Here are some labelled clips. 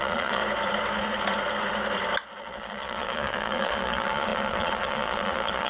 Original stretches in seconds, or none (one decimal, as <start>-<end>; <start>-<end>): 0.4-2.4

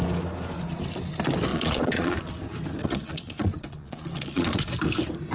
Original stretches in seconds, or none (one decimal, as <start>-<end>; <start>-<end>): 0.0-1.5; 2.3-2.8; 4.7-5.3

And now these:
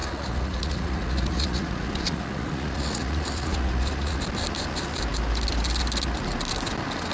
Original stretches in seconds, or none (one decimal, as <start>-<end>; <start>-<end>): 4.2-7.1

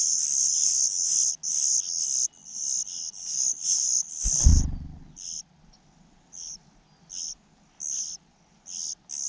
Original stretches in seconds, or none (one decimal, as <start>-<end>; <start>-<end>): 0.0-9.3

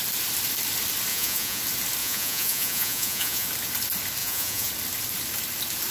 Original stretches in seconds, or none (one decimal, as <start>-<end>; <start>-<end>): 0.0-1.1; 1.6-2.0; 3.5-4.2; 4.7-5.9

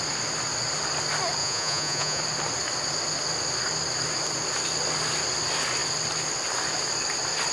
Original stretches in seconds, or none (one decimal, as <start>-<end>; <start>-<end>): 0.0-1.4; 2.2-7.5

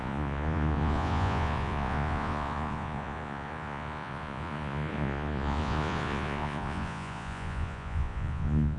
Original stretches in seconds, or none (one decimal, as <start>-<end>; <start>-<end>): none

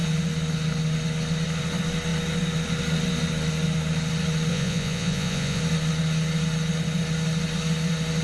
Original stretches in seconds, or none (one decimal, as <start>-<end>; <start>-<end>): 0.0-4.5; 5.6-8.2